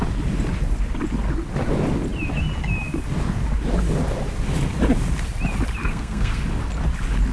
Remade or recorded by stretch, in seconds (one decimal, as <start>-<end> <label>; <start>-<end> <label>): 0.0-5.8 recorded; 5.8-6.4 remade; 6.4-7.3 recorded